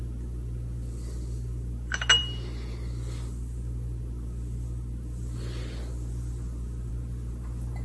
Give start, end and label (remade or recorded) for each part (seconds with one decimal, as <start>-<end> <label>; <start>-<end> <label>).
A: 0.0-7.8 recorded